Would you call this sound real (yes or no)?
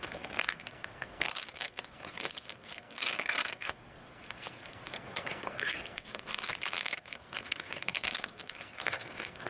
no